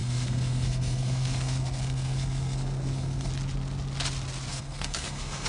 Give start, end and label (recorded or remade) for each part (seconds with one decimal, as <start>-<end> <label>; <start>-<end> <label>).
0.0-3.3 remade; 3.3-4.5 recorded; 4.5-5.5 remade